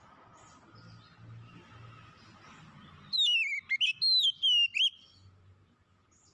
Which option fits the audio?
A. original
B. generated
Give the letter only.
A